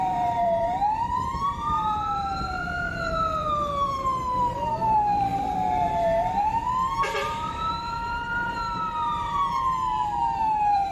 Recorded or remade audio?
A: remade